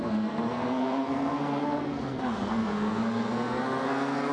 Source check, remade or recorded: remade